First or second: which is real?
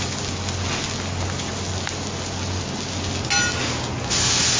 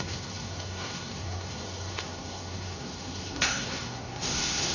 first